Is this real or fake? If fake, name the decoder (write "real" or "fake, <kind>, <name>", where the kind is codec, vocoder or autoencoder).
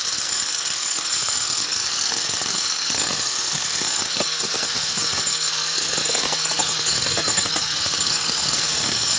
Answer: fake, codec, SNAC